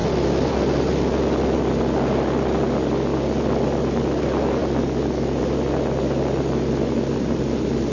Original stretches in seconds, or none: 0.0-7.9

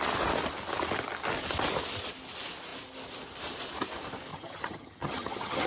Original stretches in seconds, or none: 0.0-4.3

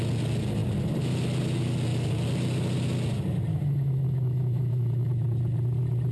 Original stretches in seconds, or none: 0.0-3.5; 5.1-6.1

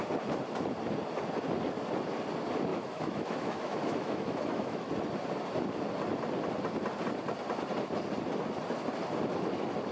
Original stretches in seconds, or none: 0.0-2.7; 4.9-9.9

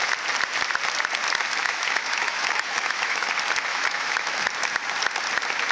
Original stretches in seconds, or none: 0.0-1.6; 3.3-3.7; 4.5-5.7

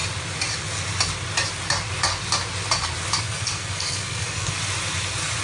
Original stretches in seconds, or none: 0.0-3.2; 4.6-5.4

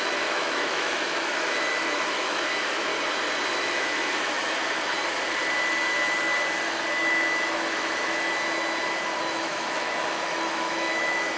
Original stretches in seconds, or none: 2.9-3.5; 4.6-7.0; 8.3-9.2